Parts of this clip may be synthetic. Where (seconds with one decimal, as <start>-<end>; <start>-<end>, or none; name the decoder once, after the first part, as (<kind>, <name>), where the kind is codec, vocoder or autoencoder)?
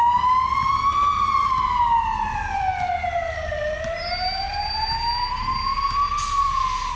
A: none